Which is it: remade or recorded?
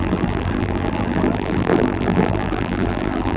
remade